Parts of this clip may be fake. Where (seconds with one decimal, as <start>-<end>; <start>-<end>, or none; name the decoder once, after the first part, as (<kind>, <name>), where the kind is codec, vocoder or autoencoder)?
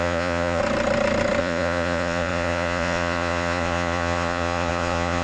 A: 0.0-0.6 (vocoder, Vocos); 1.4-5.2